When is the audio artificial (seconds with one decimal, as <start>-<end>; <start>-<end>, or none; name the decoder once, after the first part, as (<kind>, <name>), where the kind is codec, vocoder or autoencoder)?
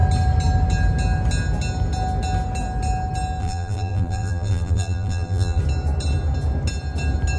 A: 3.4-5.6 (vocoder, BigVGAN v2)